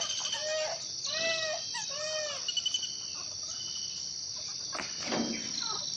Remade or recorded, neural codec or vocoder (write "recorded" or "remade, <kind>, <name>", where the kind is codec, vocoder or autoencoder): recorded